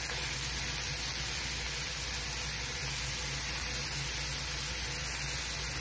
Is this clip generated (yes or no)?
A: no